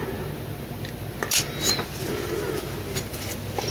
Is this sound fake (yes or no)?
no